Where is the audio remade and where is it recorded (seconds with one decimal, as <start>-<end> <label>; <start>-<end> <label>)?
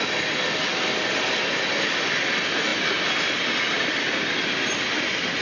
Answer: 0.0-5.4 recorded